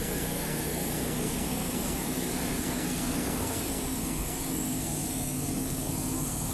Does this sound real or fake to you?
fake